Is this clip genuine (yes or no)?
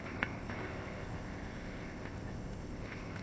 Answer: no